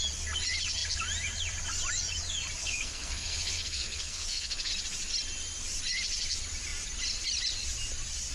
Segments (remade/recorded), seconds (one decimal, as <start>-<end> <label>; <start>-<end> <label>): 0.0-2.6 recorded; 2.6-4.7 remade; 4.7-8.3 recorded